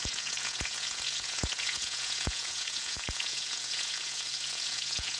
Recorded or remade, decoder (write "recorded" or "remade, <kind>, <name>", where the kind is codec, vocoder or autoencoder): remade, vocoder, Vocos